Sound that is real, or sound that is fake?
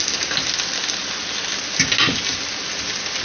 real